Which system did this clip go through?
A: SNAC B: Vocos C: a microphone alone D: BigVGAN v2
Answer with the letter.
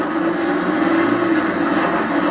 C